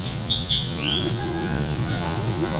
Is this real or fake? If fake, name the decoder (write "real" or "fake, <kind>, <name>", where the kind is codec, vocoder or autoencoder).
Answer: fake, vocoder, Vocos